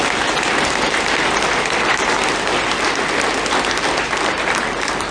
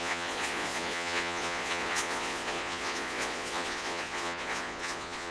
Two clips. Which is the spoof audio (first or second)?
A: second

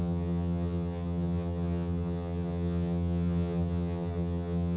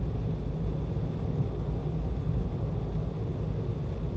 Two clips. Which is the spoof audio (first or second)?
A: first